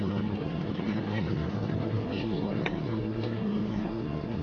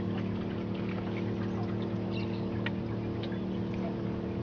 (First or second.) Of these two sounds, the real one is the second